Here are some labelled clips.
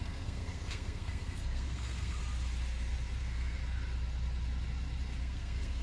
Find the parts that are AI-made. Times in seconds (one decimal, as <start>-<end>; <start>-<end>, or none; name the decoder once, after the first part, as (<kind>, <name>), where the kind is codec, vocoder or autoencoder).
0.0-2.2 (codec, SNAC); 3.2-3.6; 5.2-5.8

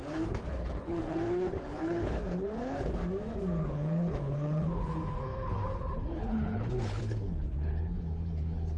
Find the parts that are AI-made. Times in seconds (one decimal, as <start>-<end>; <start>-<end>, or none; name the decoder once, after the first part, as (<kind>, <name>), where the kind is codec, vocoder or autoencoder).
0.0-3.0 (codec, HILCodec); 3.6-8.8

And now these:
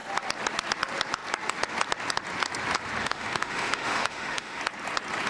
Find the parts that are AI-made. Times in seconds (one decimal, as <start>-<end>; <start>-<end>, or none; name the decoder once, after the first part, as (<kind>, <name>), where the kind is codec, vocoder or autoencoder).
3.0-4.6 (autoencoder, DAC-VAE)

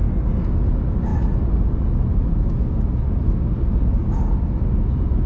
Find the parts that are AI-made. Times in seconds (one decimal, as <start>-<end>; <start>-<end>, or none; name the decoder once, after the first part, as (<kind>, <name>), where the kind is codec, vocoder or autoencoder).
none

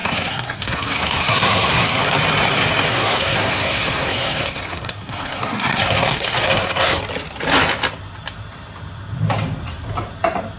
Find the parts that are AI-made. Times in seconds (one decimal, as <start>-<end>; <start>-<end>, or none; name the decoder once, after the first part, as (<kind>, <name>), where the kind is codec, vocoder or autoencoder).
0.0-2.0 (codec, SNAC); 2.9-7.0

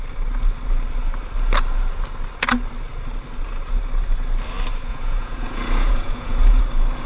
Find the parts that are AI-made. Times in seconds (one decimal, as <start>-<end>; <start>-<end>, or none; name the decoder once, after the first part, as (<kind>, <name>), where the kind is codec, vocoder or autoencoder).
4.9-6.6 (vocoder, Vocos)